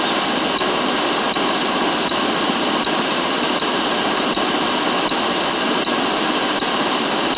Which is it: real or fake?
real